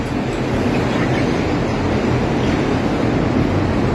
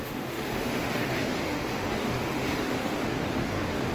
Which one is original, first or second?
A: first